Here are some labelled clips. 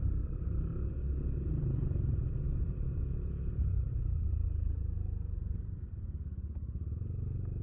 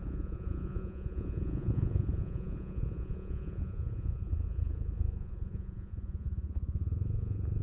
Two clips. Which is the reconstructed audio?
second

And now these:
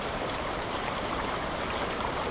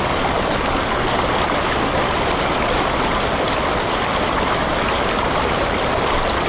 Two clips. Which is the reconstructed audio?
first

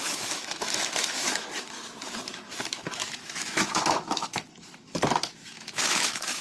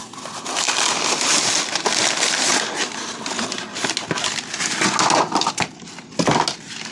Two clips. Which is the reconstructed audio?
first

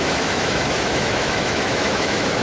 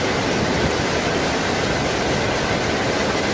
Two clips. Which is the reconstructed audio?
first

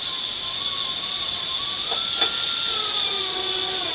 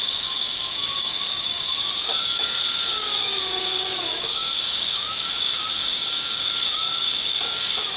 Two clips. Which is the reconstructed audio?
second